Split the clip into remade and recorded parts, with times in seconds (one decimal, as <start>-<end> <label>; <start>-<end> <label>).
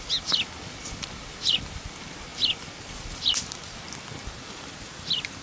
0.0-5.4 recorded